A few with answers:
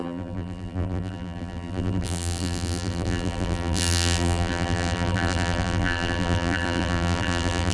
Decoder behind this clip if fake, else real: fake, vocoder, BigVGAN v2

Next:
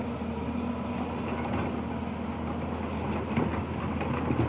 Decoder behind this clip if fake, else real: real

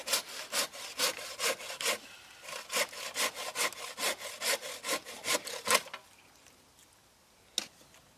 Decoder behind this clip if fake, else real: real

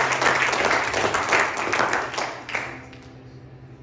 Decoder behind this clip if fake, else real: real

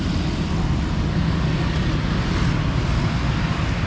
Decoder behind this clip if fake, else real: real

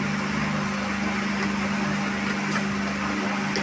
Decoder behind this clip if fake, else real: real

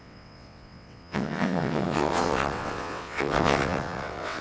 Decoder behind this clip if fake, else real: fake, vocoder, WaveNeXt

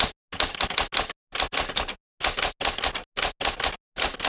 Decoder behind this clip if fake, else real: real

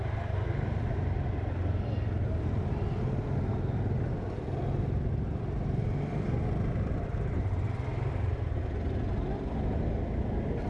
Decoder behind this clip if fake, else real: real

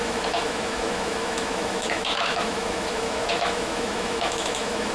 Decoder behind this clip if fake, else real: fake, autoencoder, DAC-VAE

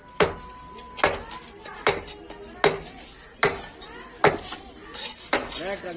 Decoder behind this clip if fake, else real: real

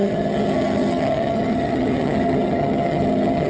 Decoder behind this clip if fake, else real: fake, vocoder, HiFi-GAN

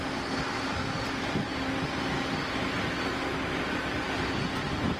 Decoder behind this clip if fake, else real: real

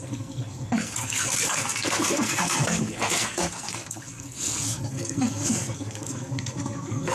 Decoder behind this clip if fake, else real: fake, codec, SNAC